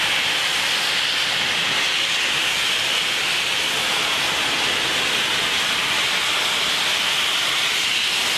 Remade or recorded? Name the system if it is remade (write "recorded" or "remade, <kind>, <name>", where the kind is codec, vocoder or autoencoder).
recorded